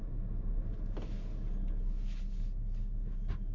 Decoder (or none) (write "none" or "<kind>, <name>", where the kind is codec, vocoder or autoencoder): none